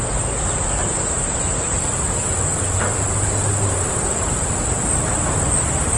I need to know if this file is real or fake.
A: real